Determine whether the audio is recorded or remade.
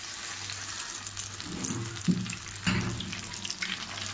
recorded